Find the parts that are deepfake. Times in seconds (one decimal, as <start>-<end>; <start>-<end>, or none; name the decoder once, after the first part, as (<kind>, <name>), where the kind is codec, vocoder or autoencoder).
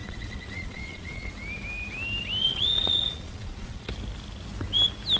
0.0-1.3 (vocoder, Vocos); 2.4-3.9